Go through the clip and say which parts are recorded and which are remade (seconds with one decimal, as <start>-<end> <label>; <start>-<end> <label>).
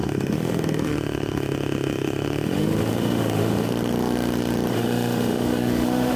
0.0-3.7 remade; 3.7-4.7 recorded; 4.7-6.2 remade